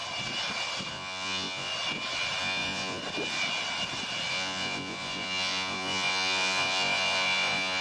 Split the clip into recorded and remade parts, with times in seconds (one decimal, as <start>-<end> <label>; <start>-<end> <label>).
0.0-0.9 recorded; 0.9-1.7 remade; 1.7-2.4 recorded; 2.4-3.0 remade; 3.0-4.3 recorded; 4.3-7.8 remade

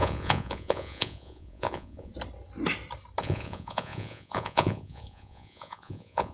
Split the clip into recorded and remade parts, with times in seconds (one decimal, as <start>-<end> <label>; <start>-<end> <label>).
0.0-2.1 remade; 2.1-3.2 recorded; 3.2-6.3 remade